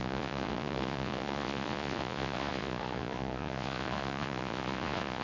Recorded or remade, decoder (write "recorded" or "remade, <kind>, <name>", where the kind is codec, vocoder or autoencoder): remade, vocoder, Vocos